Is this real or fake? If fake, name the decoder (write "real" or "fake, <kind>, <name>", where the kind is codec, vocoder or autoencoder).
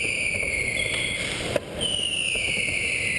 fake, vocoder, BigVGAN v2